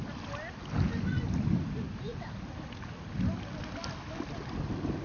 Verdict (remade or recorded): recorded